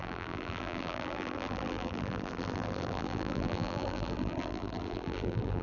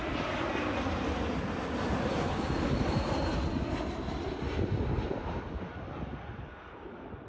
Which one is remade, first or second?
first